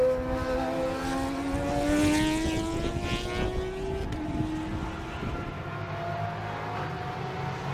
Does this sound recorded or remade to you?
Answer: recorded